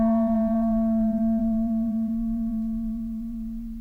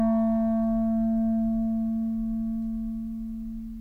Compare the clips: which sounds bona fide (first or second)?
second